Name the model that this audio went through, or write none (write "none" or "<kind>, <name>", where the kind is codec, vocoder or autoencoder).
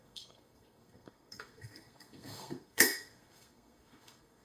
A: codec, SNAC